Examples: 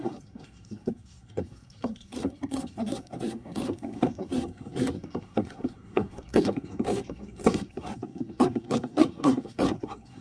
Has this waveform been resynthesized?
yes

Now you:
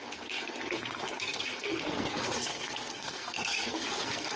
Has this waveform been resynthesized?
yes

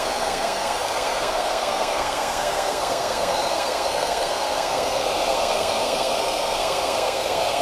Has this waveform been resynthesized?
yes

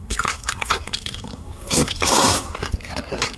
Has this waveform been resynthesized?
yes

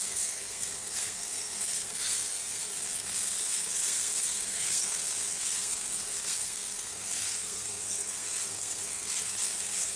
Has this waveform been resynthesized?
yes